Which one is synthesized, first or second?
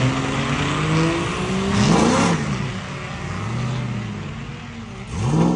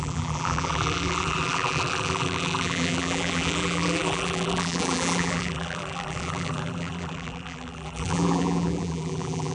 second